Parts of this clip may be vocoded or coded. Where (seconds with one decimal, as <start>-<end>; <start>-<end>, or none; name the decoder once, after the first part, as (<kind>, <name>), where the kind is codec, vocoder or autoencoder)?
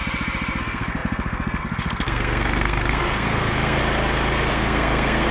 0.6-3.8 (codec, SNAC); 4.5-5.3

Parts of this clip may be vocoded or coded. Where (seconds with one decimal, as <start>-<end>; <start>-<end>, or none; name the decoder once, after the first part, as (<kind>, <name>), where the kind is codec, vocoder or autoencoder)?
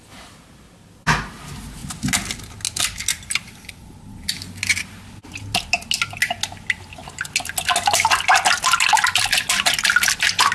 none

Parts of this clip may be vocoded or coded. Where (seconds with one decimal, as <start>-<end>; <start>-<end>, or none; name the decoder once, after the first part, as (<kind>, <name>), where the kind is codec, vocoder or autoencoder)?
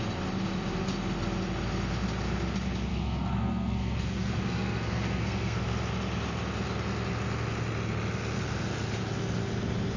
2.9-5.6 (codec, SNAC)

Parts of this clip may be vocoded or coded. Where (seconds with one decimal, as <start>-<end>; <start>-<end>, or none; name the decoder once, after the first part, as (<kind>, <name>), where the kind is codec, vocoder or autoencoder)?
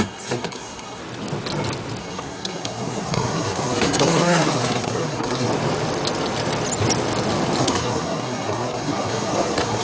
0.0-1.0 (codec, SNAC); 2.0-5.5; 7.6-9.8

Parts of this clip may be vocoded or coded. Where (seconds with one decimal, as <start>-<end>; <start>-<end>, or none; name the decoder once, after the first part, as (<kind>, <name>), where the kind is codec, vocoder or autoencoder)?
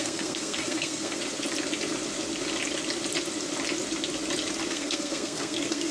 0.0-1.2 (codec, SNAC); 4.7-5.9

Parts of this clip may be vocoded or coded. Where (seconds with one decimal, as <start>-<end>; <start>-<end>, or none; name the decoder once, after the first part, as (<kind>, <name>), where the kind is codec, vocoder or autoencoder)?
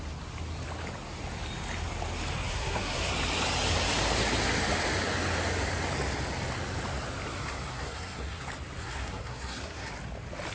2.5-3.1 (codec, SNAC); 7.7-8.4; 8.8-9.9